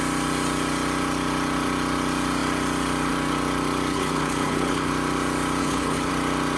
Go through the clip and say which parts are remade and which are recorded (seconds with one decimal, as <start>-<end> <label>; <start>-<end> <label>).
0.0-3.9 recorded; 3.9-4.9 remade; 4.9-5.6 recorded; 5.6-6.1 remade; 6.1-6.6 recorded